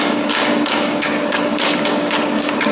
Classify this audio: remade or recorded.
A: remade